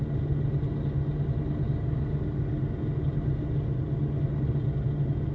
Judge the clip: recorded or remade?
recorded